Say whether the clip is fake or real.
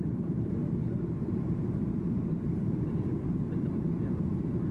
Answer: fake